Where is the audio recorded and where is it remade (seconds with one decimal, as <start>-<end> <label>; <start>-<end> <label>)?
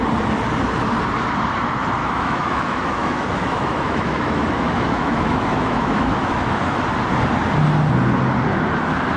0.0-2.0 recorded; 2.0-6.8 remade; 6.8-9.2 recorded